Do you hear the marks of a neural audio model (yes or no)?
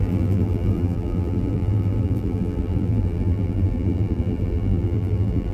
yes